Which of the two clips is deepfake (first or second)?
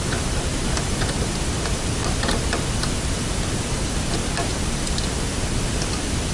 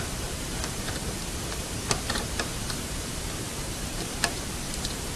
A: second